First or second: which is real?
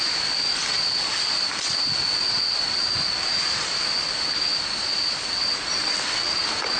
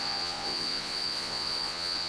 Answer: first